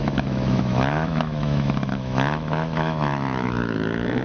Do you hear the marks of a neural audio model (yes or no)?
yes